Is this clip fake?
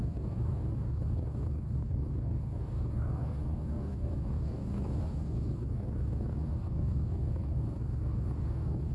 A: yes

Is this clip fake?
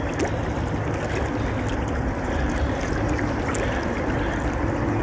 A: no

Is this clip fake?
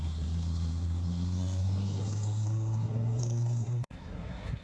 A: yes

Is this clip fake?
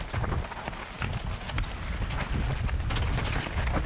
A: no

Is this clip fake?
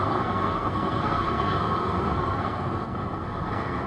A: yes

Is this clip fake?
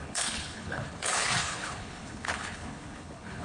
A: yes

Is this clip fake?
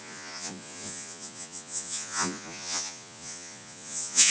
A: yes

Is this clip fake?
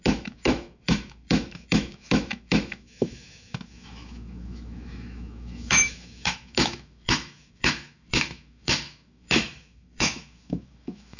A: yes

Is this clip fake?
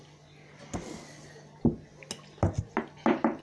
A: no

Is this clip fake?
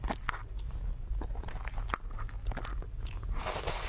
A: no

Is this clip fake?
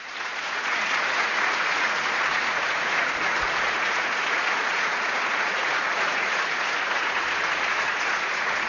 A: yes